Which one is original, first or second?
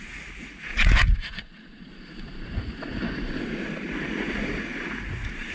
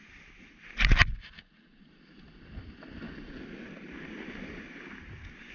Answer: second